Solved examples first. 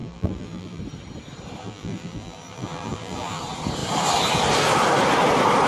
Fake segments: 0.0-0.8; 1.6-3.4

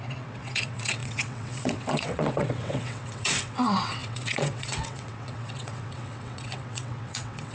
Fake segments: 0.0-7.5